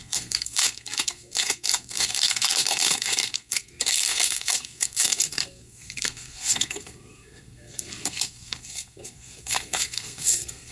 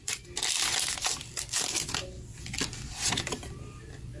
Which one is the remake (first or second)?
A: first